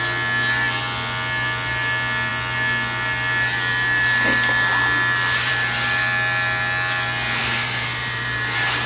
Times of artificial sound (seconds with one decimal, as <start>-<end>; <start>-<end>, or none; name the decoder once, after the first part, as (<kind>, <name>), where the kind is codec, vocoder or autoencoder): 7.4-8.9 (vocoder, BigVGAN v2)